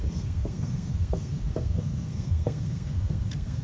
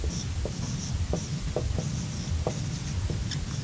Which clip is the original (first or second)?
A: second